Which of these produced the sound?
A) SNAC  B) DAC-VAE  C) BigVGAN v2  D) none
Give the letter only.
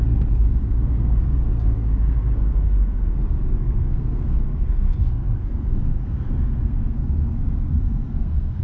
A